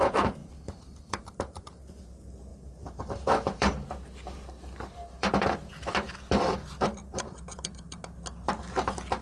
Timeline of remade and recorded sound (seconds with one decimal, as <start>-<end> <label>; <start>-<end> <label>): 0.0-0.4 recorded; 0.4-2.0 remade; 2.0-2.5 recorded; 2.5-7.6 remade; 7.6-9.2 recorded